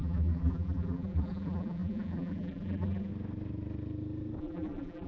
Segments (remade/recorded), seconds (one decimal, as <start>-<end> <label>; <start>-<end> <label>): 0.0-3.1 remade; 3.1-4.4 recorded; 4.4-5.1 remade